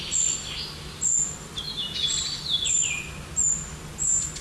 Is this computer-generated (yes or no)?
no